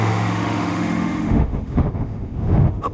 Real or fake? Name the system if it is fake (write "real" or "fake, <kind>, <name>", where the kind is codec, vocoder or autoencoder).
fake, autoencoder, DAC-VAE